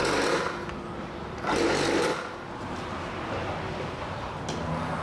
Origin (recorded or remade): recorded